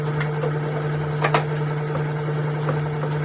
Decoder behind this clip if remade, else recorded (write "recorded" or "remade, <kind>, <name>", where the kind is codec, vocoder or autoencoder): recorded